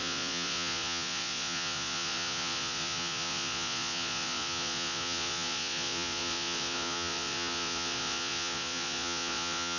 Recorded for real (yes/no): no